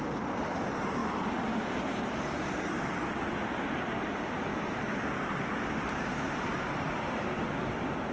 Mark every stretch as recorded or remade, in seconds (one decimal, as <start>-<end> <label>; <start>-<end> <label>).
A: 0.0-1.0 recorded; 1.0-3.1 remade; 3.1-4.5 recorded; 4.5-8.1 remade